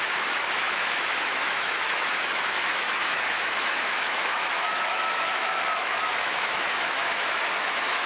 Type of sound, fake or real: fake